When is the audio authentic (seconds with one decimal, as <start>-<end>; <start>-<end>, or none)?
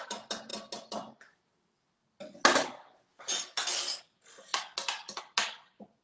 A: 0.0-6.0